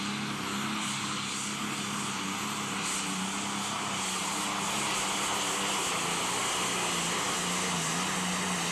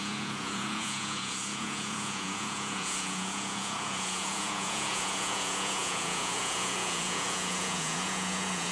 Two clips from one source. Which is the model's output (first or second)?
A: second